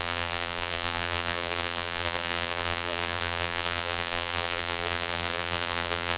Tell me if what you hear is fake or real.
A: fake